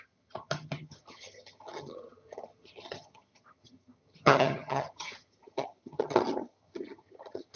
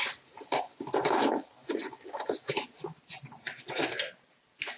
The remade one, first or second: first